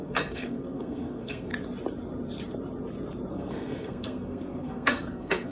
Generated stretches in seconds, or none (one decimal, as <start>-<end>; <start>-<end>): 0.0-1.5; 3.3-5.5